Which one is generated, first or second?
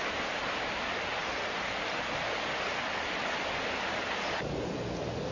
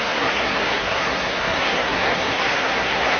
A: second